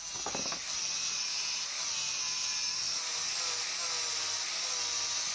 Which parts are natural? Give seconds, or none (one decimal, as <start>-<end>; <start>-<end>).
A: 0.0-0.5; 3.7-5.3